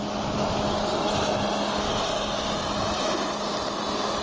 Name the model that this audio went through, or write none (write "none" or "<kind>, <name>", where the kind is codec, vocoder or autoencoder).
none